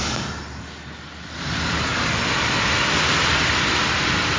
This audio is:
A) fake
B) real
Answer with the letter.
B